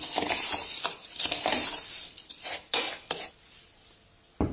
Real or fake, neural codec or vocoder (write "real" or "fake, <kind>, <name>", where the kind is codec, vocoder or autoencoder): real